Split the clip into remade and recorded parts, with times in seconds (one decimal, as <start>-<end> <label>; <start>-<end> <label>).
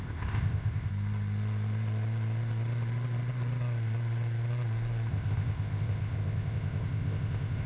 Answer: 0.0-0.9 remade; 0.9-5.1 recorded; 5.1-7.7 remade